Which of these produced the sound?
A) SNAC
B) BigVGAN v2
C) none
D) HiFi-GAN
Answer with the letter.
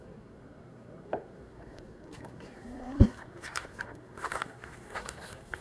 A